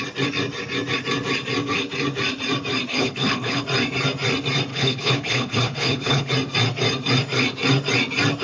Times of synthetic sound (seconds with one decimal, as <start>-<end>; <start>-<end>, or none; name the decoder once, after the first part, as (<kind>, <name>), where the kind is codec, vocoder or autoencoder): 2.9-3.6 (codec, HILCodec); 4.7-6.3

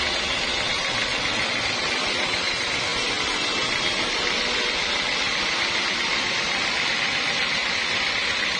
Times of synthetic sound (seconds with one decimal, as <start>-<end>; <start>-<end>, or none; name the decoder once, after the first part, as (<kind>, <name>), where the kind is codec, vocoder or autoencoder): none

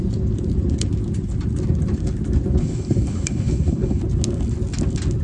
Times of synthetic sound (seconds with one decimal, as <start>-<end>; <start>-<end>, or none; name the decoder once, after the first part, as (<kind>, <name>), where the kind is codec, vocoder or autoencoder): 2.6-4.0 (codec, HILCodec)

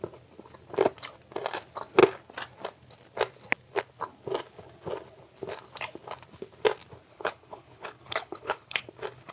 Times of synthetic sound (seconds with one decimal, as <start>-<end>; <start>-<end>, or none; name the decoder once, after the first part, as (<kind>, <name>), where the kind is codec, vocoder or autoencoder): 7.1-8.8 (codec, HILCodec)

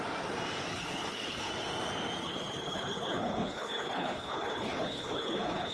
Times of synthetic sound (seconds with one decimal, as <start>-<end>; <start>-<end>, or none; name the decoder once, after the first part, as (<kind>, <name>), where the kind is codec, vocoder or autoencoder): 0.7-1.5 (codec, HILCodec); 2.2-5.7